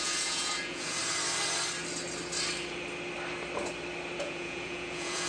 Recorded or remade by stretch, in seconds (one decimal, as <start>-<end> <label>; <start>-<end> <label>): 0.0-1.0 remade; 1.0-4.2 recorded; 4.2-5.3 remade